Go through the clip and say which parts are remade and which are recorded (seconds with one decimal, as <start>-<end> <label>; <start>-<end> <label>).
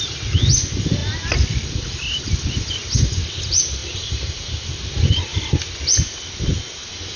0.0-3.8 recorded; 3.8-4.5 remade; 4.5-7.2 recorded